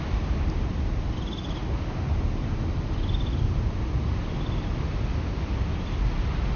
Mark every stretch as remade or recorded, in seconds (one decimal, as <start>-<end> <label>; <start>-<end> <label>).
0.0-6.6 recorded